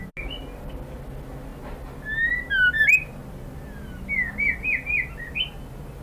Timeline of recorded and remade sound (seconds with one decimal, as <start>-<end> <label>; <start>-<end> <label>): 0.0-6.0 recorded